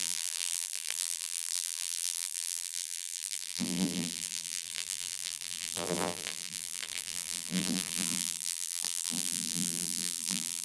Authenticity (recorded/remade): remade